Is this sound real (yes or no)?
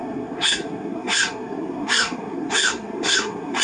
no